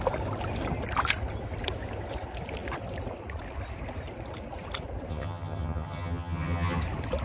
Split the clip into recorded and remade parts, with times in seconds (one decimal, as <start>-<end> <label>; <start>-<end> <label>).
0.0-5.1 recorded; 5.1-6.8 remade; 6.8-7.2 recorded